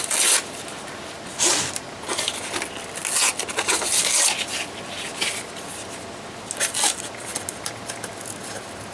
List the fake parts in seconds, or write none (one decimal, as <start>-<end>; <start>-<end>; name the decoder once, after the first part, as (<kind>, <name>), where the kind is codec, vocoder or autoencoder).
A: none